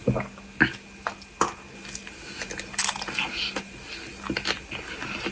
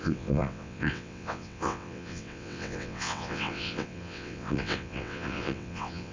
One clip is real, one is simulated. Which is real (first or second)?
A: first